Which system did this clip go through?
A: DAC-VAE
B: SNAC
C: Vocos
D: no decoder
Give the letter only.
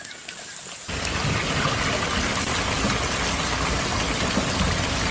D